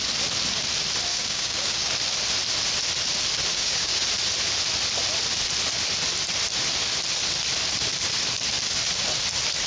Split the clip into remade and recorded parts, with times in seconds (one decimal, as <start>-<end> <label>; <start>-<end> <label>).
0.0-1.1 recorded; 1.1-1.9 remade; 1.9-3.5 recorded; 3.5-4.0 remade; 4.0-9.7 recorded